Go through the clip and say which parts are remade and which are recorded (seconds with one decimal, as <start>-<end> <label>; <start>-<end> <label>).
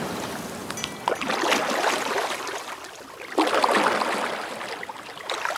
0.0-5.6 recorded